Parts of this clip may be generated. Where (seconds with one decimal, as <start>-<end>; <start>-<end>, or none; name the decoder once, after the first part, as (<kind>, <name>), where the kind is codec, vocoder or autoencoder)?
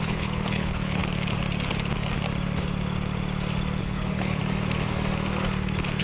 0.0-1.0 (codec, HILCodec); 3.8-4.4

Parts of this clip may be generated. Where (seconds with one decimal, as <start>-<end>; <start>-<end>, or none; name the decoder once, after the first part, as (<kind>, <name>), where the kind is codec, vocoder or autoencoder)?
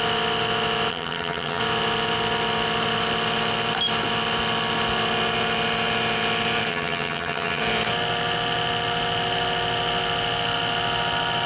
0.9-1.6 (vocoder, HiFi-GAN); 6.7-7.6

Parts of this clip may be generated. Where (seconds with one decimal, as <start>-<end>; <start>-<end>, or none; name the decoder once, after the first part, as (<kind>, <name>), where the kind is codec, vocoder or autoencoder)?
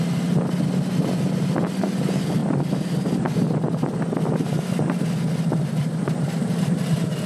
none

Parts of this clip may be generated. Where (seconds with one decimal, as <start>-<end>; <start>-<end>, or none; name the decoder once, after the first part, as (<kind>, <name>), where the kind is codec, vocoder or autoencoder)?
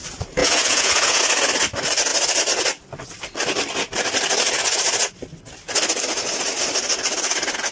0.4-1.2 (vocoder, Vocos)